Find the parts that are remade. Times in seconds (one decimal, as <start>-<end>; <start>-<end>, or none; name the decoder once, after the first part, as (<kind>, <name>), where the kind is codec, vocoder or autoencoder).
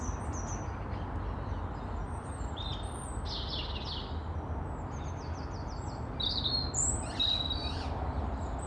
7.6-8.7 (vocoder, BigVGAN v2)